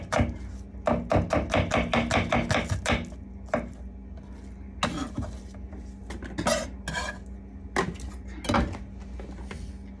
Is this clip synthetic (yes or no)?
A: no